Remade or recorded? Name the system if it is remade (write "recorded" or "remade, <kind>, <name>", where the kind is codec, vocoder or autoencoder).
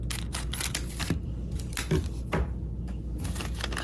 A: recorded